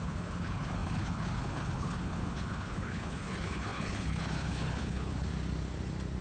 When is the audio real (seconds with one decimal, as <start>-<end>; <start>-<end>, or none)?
5.3-6.2